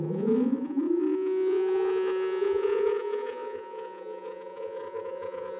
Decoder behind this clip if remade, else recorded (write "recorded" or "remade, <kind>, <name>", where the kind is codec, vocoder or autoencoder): remade, vocoder, Vocos